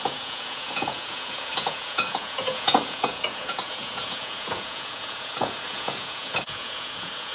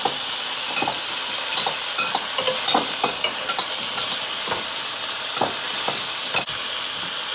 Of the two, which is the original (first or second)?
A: second